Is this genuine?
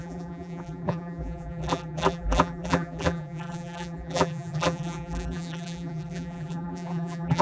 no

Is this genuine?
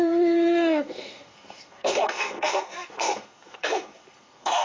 no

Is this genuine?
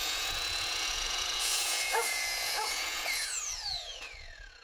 no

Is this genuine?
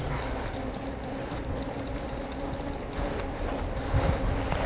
yes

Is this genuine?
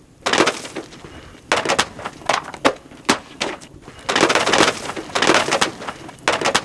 yes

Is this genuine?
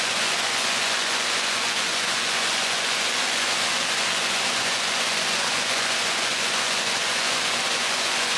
no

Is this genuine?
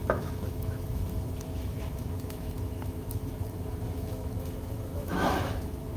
no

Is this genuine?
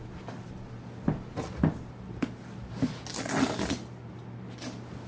yes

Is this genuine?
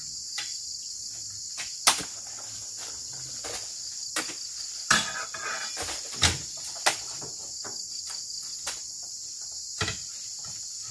yes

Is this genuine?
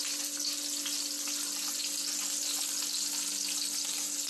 yes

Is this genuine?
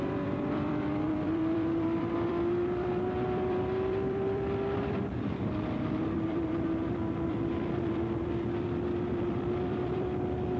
no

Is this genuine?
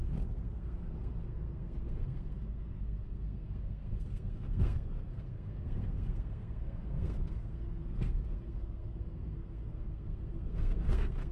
no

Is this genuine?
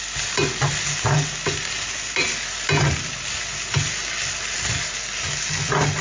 yes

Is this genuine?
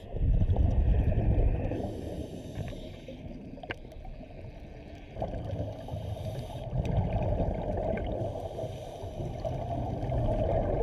yes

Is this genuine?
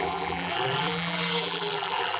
no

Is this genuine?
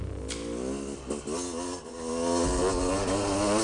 yes